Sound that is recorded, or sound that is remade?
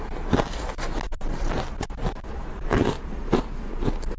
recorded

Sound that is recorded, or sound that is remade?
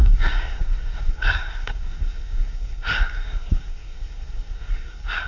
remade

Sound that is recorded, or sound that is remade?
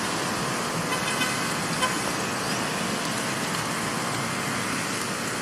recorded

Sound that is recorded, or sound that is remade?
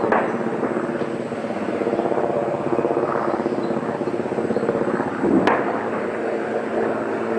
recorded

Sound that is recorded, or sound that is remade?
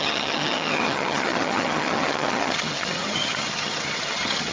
remade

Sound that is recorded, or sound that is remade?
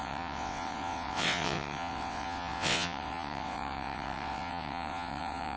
remade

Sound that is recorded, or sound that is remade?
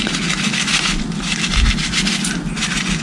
recorded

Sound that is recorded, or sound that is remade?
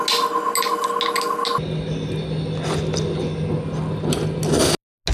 recorded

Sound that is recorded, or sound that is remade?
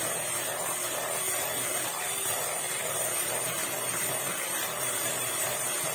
remade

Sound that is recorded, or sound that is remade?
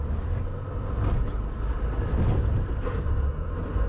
recorded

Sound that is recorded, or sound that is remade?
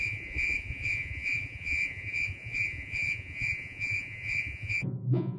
remade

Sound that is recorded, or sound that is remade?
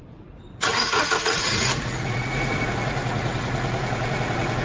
remade